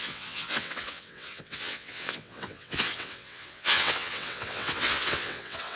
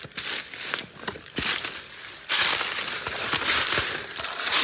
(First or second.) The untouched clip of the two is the second